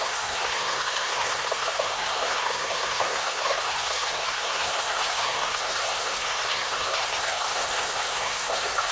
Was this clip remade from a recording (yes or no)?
yes